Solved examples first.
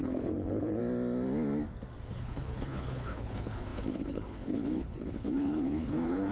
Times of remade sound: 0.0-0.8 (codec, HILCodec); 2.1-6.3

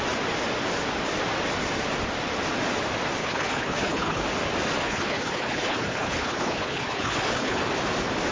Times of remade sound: 3.2-4.2 (codec, HILCodec); 4.8-7.6